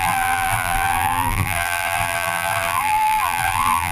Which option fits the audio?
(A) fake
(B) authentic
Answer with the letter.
A